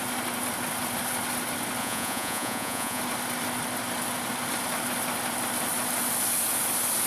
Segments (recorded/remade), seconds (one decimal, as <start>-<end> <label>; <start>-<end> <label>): 0.0-1.8 recorded; 1.8-3.0 remade; 3.0-7.1 recorded